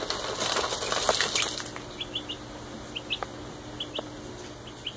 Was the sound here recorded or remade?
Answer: recorded